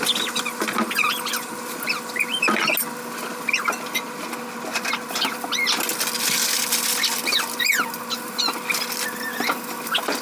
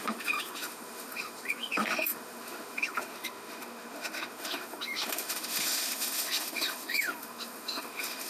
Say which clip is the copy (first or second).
second